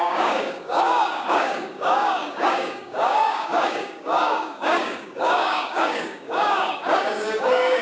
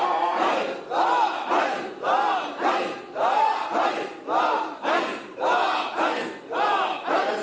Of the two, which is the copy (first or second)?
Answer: first